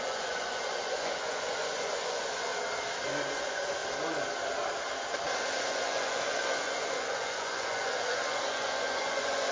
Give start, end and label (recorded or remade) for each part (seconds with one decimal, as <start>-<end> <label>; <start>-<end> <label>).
0.0-2.5 remade; 2.5-3.3 recorded; 3.3-3.8 remade; 3.8-5.6 recorded; 5.6-9.5 remade